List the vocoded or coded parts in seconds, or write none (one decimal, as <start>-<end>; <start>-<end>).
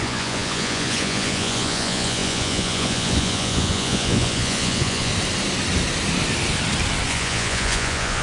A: 0.0-5.1; 7.1-8.2